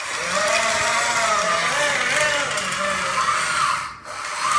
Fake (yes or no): no